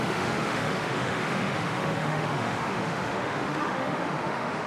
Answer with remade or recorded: remade